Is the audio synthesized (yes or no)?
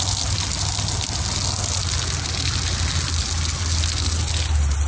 no